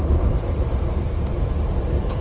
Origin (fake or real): real